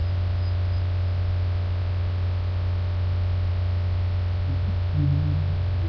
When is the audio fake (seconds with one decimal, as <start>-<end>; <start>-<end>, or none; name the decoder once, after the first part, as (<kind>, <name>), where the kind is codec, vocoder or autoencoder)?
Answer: none